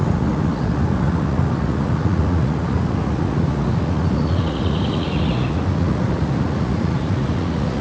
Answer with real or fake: fake